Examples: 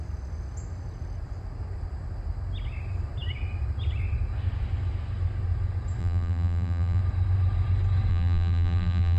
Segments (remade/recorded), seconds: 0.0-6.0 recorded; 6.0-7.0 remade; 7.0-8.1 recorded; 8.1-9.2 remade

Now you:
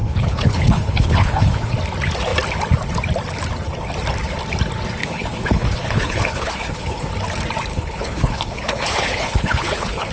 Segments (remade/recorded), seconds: 0.0-1.7 remade; 1.7-5.0 recorded; 5.0-7.1 remade; 7.1-7.7 recorded; 7.7-10.1 remade

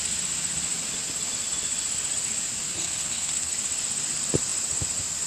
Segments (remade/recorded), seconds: 0.0-2.7 recorded; 2.7-3.5 remade; 3.5-5.3 recorded

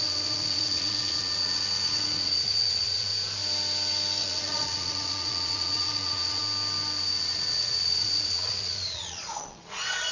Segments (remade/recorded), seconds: 0.0-3.1 remade; 3.1-4.2 recorded; 4.2-6.4 remade; 6.4-7.2 recorded; 7.2-10.1 remade